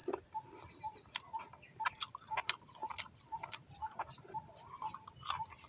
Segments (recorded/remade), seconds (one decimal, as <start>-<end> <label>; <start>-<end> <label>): 0.0-5.7 recorded

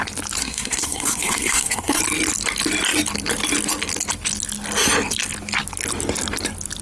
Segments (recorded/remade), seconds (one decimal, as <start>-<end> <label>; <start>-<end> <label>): 0.0-0.4 recorded; 0.4-2.0 remade; 2.0-6.8 recorded

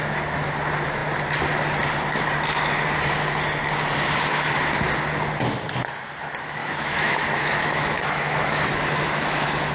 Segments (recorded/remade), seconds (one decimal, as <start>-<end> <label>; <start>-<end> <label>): 0.0-6.6 recorded; 6.6-9.7 remade

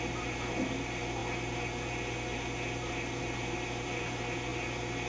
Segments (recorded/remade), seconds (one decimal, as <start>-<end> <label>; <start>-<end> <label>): 0.0-5.1 recorded

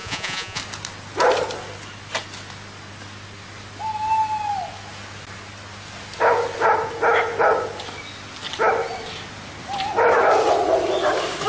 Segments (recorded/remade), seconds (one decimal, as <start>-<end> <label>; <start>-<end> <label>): 0.0-0.6 remade; 0.6-11.5 recorded

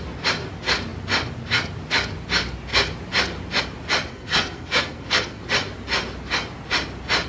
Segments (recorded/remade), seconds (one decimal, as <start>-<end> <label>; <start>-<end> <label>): 0.0-4.1 recorded; 4.1-5.4 remade; 5.4-7.3 recorded

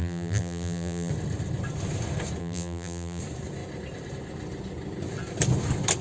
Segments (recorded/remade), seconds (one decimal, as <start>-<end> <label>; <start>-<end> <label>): 0.0-1.1 remade; 1.1-2.4 recorded; 2.4-3.2 remade; 3.2-6.0 recorded